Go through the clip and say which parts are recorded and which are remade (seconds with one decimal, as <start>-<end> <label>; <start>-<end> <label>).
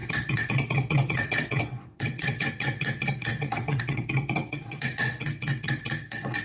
0.0-6.4 remade